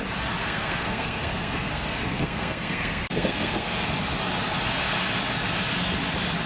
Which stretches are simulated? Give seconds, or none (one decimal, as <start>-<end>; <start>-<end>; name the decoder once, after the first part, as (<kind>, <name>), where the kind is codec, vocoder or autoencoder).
0.4-3.9 (codec, SNAC)